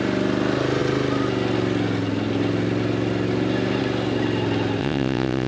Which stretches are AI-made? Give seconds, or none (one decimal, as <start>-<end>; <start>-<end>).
4.8-5.5